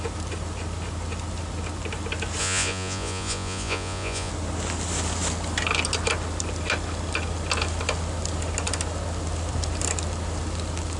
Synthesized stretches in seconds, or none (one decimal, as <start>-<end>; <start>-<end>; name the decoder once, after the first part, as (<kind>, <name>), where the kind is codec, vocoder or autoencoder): 2.4-4.3 (vocoder, Vocos)